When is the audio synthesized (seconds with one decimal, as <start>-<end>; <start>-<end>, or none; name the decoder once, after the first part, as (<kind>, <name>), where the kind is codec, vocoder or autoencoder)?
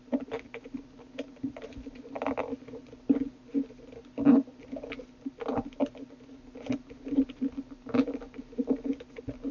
none